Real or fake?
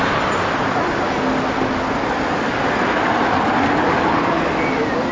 real